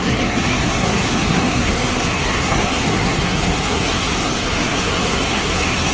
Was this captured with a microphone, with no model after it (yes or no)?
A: no